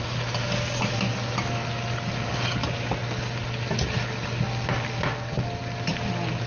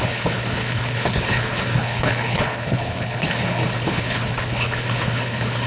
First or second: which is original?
first